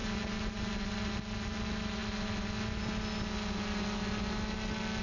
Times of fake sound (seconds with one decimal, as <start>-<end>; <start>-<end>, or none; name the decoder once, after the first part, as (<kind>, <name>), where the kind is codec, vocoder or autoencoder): none